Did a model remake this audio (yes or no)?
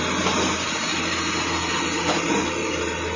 no